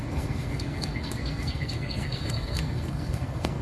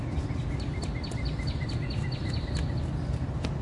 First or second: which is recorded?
second